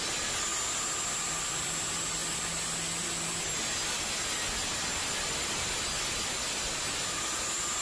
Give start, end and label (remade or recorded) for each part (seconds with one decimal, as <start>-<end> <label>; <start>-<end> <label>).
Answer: 0.0-7.8 recorded